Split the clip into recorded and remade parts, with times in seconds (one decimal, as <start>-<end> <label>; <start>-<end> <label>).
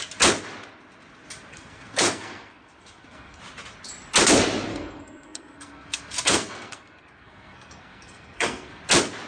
0.0-1.5 recorded; 1.5-3.4 remade; 3.4-4.7 recorded; 4.7-8.8 remade; 8.8-9.3 recorded